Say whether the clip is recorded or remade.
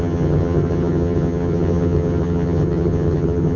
remade